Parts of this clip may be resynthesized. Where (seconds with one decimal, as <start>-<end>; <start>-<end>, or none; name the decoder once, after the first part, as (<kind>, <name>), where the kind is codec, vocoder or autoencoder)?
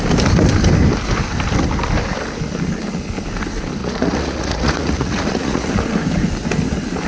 3.8-5.7 (vocoder, Vocos)